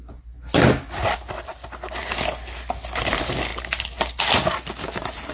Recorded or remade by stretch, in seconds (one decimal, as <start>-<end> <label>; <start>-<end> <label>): 0.0-5.3 recorded